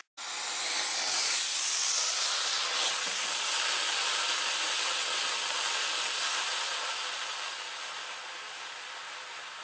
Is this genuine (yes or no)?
yes